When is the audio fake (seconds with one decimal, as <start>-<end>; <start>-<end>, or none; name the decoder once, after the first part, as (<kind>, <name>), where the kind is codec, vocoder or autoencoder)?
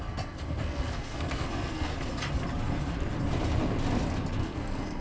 0.0-1.9 (codec, SNAC); 4.4-5.0